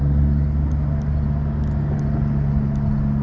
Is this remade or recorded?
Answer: recorded